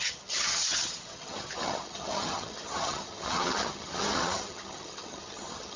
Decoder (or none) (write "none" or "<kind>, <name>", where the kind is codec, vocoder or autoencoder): vocoder, HiFi-GAN